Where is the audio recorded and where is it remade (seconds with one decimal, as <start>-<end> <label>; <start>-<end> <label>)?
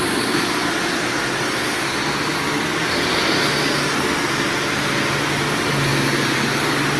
0.0-7.0 recorded